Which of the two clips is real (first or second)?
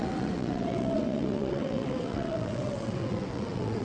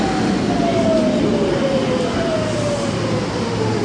second